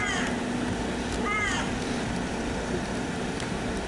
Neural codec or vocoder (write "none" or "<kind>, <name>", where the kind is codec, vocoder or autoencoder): none